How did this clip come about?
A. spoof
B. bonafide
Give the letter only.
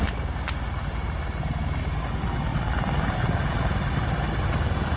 B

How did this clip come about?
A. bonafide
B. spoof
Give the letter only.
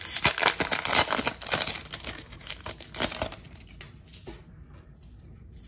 A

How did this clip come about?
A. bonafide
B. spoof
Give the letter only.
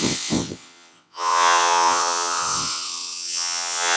B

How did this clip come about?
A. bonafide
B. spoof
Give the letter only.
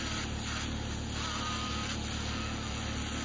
A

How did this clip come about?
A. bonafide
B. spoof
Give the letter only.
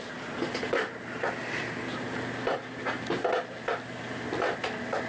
A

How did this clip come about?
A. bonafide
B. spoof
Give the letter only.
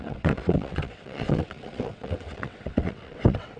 B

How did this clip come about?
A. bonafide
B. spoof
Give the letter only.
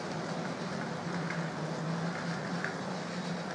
A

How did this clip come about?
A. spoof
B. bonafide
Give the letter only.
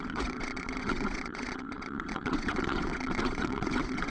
A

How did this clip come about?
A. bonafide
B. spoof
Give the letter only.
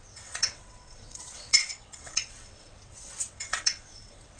B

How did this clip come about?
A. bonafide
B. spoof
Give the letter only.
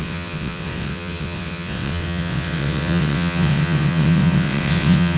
B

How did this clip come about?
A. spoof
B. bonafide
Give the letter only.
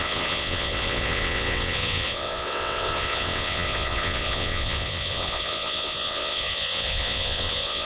A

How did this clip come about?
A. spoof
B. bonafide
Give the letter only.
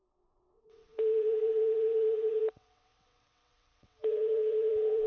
A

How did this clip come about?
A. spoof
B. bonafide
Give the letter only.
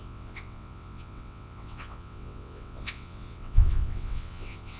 A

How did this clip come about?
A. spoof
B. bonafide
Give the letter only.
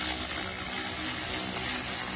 B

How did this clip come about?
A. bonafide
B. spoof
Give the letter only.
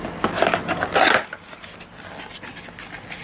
A